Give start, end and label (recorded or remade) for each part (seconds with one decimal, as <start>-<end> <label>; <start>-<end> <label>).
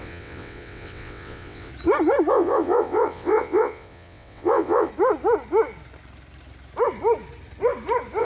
0.0-1.7 remade; 1.7-2.3 recorded; 2.3-4.9 remade; 4.9-8.2 recorded